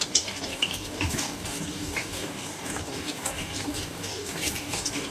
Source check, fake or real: fake